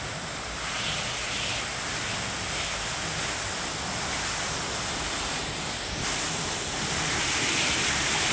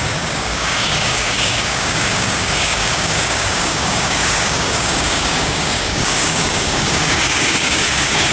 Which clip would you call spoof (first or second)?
second